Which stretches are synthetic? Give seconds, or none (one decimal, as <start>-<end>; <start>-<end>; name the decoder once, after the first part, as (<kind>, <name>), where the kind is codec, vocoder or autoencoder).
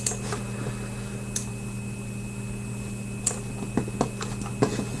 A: none